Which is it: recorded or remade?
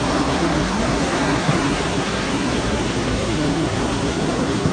remade